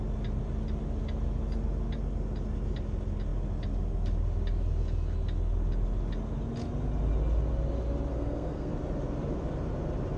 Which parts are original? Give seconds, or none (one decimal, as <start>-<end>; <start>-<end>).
0.0-8.1; 8.7-10.2